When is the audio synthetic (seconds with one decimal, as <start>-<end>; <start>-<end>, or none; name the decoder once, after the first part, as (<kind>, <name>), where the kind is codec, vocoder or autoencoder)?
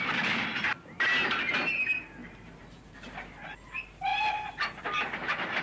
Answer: none